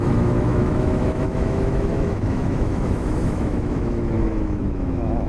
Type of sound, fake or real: fake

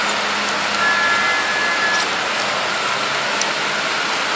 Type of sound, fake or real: real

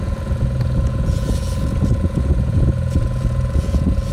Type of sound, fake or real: fake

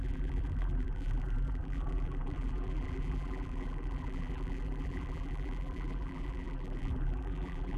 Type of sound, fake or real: fake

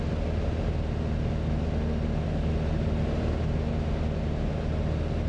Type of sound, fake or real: real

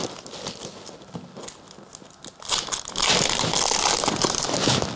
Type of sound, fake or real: real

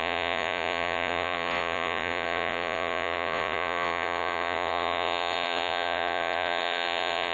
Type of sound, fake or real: fake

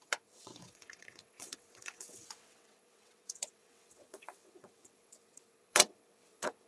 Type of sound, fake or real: fake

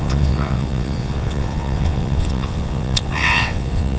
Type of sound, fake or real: fake